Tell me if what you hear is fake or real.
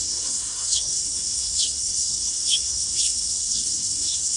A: fake